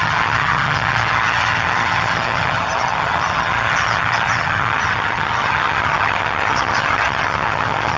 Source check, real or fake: fake